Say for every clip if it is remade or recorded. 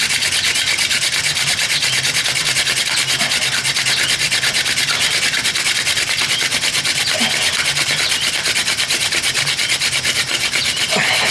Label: recorded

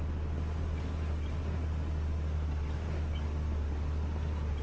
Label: recorded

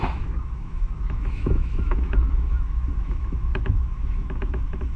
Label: remade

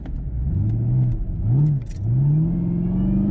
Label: recorded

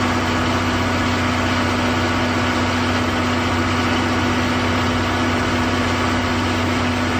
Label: recorded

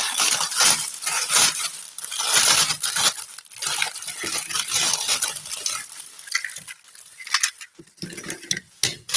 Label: recorded